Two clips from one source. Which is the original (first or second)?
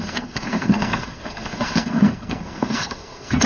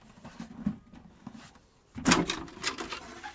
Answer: second